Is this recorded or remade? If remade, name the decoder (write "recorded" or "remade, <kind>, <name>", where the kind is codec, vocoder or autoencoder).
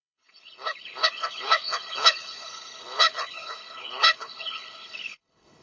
remade, codec, HILCodec